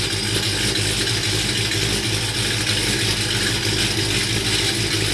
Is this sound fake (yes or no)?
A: no